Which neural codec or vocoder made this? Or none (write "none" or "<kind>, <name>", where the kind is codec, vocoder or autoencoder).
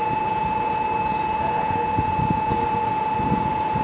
none